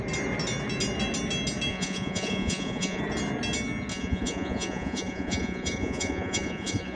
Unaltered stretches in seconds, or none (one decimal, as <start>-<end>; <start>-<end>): 0.0-1.7; 3.0-3.9